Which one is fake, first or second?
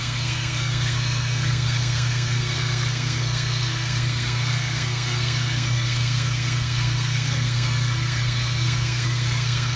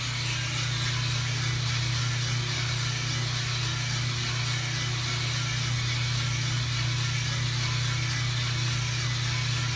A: first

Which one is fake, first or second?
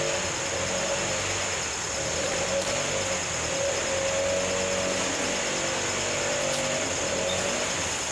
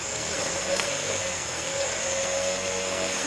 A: second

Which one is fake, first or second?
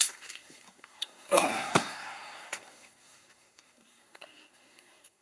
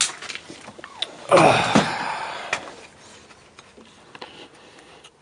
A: first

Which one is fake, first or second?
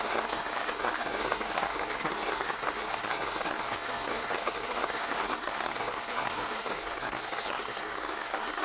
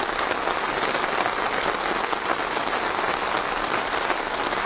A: first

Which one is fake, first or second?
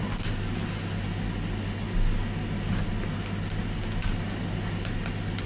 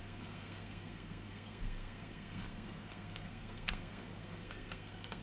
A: second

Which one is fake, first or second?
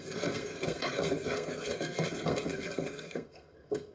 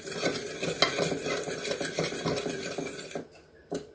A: first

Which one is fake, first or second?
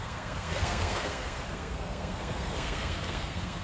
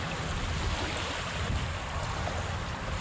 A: first